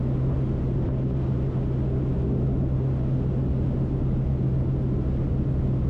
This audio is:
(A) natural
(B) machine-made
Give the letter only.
A